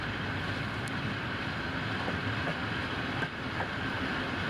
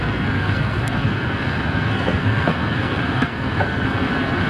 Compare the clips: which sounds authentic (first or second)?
first